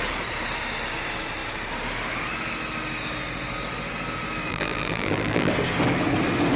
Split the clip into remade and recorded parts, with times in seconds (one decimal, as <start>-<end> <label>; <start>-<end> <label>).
0.0-4.5 recorded; 4.5-5.5 remade; 5.5-6.6 recorded